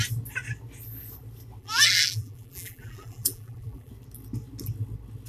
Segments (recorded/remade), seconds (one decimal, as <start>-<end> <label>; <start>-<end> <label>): 0.0-1.6 recorded; 1.6-3.9 remade; 3.9-5.3 recorded